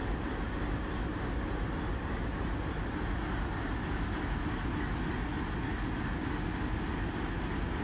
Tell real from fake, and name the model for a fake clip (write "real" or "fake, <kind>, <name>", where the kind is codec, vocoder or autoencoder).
real